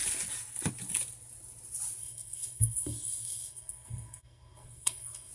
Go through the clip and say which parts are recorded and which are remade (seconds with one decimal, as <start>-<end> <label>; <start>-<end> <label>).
0.0-2.0 recorded; 2.0-5.3 remade